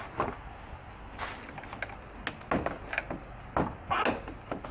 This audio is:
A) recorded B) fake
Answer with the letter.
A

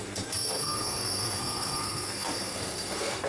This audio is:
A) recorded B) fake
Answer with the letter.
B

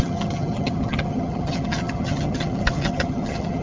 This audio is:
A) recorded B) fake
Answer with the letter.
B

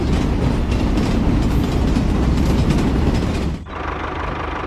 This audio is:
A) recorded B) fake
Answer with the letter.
A